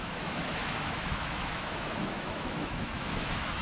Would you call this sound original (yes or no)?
no